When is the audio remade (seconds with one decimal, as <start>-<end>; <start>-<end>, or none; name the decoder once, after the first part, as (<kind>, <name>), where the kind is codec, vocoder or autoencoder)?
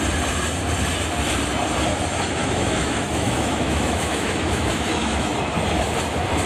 2.4-5.3 (autoencoder, DAC-VAE)